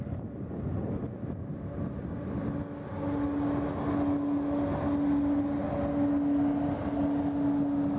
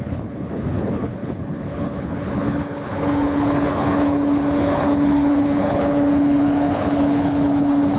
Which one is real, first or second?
first